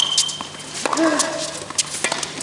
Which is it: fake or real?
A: real